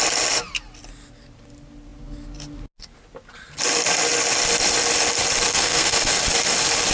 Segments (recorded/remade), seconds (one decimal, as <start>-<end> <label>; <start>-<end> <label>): 0.0-5.5 recorded; 5.5-6.2 remade; 6.2-6.9 recorded